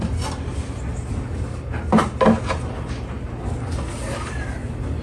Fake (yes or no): no